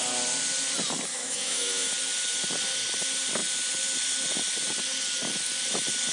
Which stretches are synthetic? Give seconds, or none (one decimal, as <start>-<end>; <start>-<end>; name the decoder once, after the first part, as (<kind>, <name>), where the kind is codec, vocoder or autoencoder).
1.1-1.9 (autoencoder, DAC-VAE)